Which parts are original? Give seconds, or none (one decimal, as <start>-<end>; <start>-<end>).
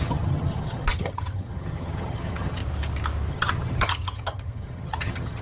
2.6-3.3